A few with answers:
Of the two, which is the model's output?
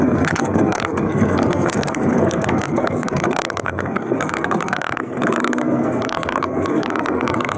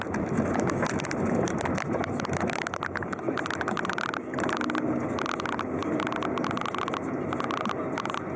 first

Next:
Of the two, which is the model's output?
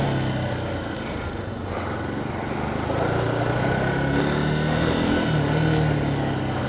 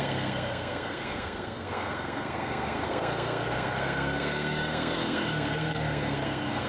second